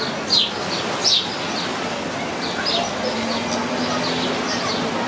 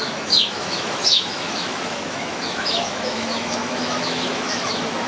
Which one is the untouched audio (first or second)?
first